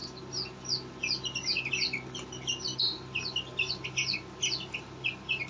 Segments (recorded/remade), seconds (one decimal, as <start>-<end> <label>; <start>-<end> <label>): 0.0-5.5 recorded